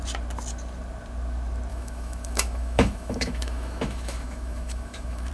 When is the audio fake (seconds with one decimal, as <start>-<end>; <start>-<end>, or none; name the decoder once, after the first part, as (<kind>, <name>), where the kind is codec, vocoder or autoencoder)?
1.7-5.3 (autoencoder, DAC-VAE)